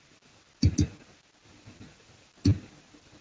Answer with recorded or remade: recorded